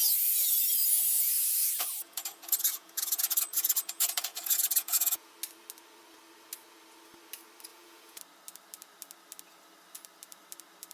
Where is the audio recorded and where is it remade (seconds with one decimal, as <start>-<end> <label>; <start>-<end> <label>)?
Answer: 0.0-0.9 recorded; 0.9-5.3 remade; 5.3-7.7 recorded; 7.7-8.2 remade; 8.2-10.9 recorded